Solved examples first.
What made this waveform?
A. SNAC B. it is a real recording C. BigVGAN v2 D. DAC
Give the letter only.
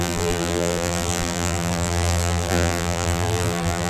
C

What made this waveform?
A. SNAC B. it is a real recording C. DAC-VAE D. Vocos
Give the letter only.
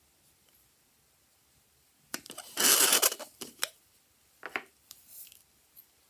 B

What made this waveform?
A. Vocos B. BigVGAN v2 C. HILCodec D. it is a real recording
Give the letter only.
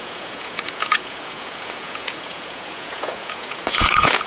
A